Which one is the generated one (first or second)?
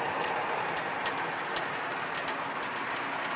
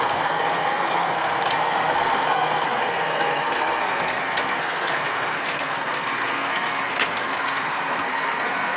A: second